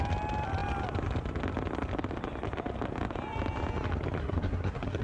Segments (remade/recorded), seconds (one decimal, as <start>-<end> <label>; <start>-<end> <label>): 0.0-4.2 recorded; 4.2-5.0 remade